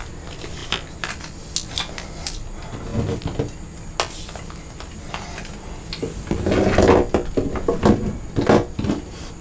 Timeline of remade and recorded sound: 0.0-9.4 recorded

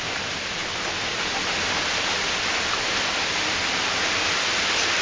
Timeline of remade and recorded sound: 0.0-5.0 recorded

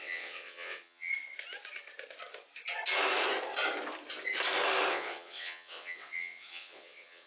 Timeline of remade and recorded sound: 0.0-1.1 remade; 1.1-4.9 recorded; 4.9-7.3 remade

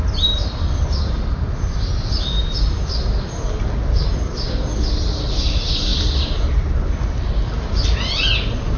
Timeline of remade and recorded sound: 0.0-8.8 recorded

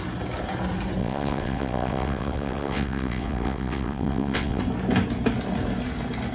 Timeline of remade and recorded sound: 0.0-1.0 recorded; 1.0-4.6 remade; 4.6-6.3 recorded